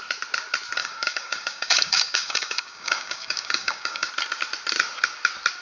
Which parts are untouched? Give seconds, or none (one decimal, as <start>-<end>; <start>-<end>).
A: 0.0-0.8; 4.1-5.6